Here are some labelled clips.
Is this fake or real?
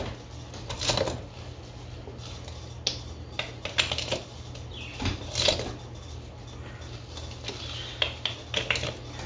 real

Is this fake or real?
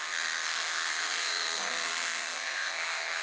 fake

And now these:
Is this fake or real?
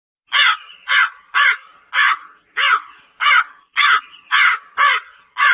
real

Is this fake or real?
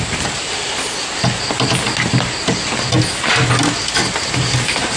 real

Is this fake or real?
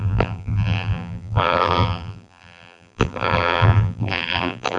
fake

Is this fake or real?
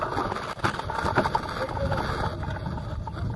real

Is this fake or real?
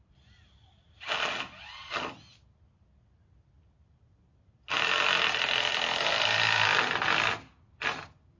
real